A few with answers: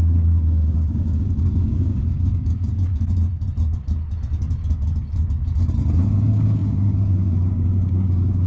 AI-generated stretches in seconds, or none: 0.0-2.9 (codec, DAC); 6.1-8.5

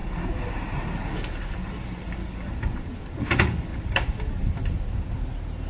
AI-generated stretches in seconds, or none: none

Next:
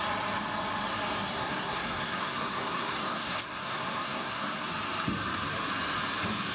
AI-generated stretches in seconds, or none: 1.3-4.7 (codec, SNAC)

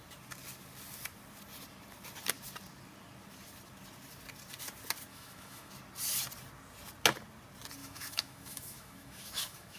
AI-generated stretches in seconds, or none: 5.1-5.7 (autoencoder, DAC-VAE); 7.8-9.8